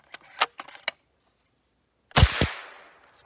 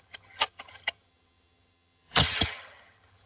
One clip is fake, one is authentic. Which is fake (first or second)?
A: second